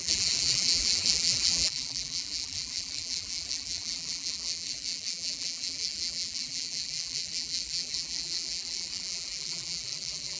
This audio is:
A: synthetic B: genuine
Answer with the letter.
A